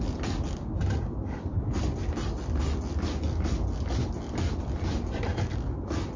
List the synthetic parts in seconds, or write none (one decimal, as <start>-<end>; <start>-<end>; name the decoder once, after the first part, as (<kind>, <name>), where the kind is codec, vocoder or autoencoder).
1.2-2.6 (vocoder, BigVGAN v2); 5.3-6.2